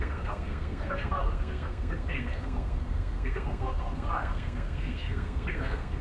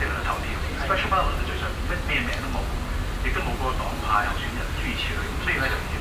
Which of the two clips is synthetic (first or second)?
first